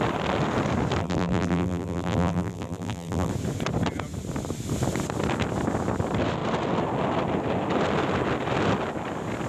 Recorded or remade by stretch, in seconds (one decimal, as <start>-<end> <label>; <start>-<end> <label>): 0.0-1.0 recorded; 1.0-3.3 remade; 3.3-9.5 recorded